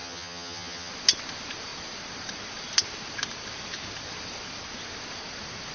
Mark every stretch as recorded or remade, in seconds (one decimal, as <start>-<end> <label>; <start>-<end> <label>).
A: 0.0-0.9 remade; 0.9-5.7 recorded